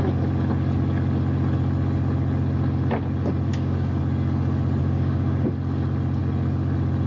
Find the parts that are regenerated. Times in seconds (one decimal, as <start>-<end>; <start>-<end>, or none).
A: 3.5-4.0; 4.8-5.5